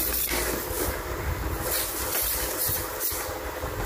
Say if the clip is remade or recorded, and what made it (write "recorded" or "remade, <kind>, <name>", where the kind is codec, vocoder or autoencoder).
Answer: recorded